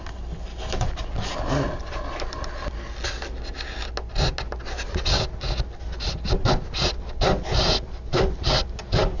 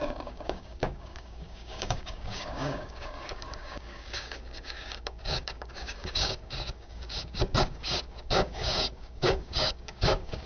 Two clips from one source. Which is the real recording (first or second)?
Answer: first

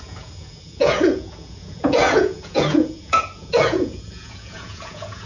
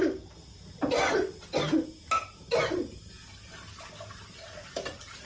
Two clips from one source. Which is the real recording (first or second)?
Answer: second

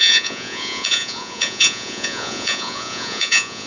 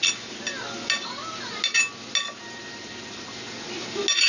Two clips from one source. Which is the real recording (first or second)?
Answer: second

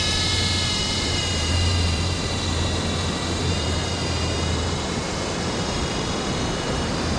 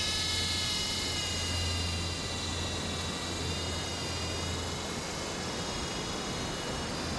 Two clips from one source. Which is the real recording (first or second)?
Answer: second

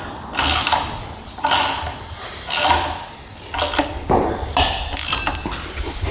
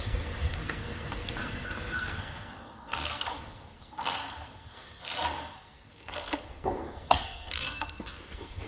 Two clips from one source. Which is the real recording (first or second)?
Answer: first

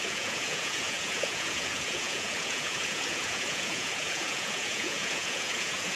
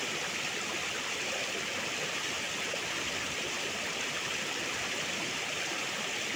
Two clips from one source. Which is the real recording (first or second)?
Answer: second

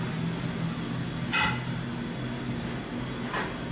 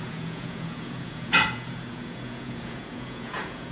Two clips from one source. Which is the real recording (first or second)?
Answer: first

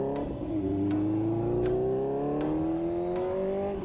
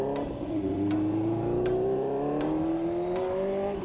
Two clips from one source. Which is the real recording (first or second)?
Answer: first